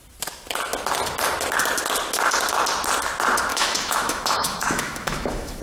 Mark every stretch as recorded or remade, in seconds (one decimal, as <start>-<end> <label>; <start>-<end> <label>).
0.0-3.5 recorded; 3.5-5.6 remade